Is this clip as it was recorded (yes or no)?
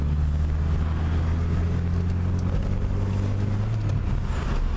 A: yes